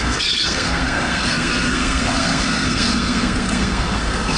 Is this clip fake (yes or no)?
yes